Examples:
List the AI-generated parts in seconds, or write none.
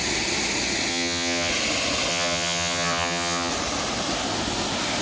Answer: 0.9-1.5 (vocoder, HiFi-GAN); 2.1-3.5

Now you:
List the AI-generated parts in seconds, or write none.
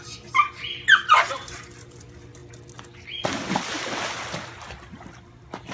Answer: none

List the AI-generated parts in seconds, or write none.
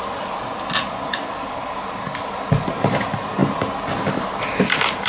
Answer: none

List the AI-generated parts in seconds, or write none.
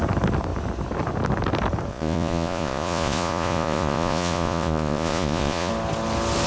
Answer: 1.9-5.7 (vocoder, Vocos)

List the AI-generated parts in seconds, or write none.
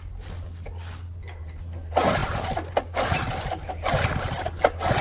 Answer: none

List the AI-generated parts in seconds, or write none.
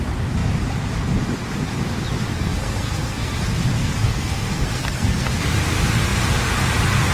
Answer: 2.3-3.4 (codec, SNAC); 3.8-5.3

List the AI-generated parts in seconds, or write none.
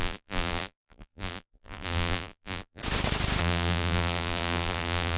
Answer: 0.0-2.8 (vocoder, BigVGAN v2); 3.4-5.2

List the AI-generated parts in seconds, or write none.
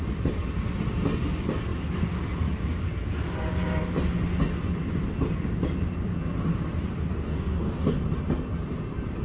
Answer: 7.1-8.0 (codec, DAC)